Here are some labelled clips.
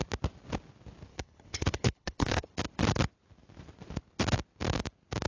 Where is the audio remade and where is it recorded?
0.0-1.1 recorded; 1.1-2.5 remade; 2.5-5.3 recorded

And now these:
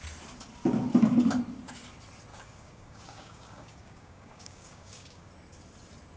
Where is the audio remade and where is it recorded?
0.0-2.3 recorded; 2.3-5.3 remade; 5.3-6.2 recorded

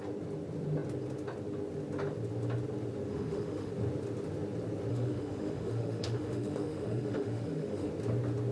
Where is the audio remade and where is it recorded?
0.0-3.1 recorded; 3.1-3.7 remade; 3.7-4.9 recorded; 4.9-7.9 remade; 7.9-8.5 recorded

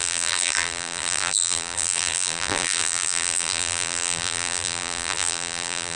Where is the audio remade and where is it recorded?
0.0-6.0 remade